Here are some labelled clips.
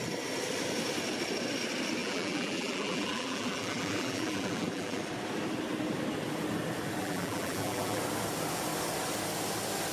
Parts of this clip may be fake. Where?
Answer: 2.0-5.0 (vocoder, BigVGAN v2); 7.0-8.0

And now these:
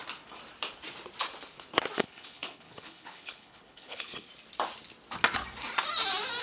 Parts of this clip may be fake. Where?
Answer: 2.0-4.3 (codec, HILCodec)

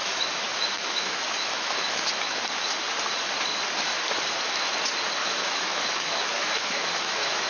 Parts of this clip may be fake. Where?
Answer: 0.0-2.1 (autoencoder, DAC-VAE); 5.2-7.5

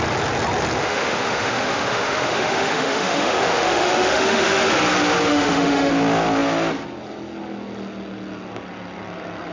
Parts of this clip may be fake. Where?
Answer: 0.8-4.6 (autoencoder, DAC-VAE); 5.3-5.9

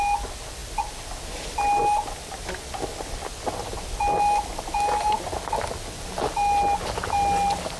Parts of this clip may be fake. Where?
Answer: none

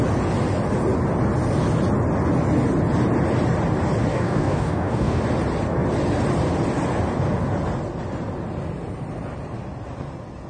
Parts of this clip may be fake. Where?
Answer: 4.1-5.2 (codec, DAC)

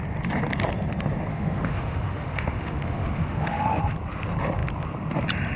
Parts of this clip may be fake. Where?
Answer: 1.3-3.8 (autoencoder, DAC-VAE)